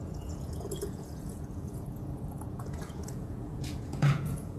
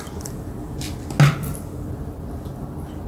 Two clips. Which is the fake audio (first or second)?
first